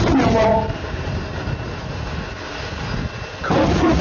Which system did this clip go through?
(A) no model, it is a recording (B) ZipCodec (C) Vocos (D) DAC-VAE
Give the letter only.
A